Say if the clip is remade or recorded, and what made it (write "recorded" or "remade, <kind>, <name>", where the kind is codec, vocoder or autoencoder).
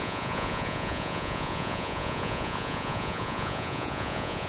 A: remade, vocoder, Vocos